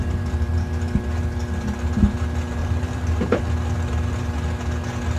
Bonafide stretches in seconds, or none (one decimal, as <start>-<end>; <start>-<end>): 0.7-2.6; 3.4-5.2